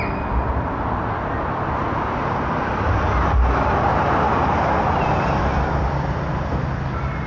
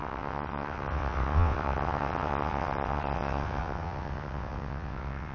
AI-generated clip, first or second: second